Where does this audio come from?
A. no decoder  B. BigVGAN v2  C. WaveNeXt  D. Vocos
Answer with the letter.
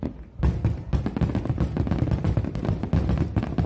A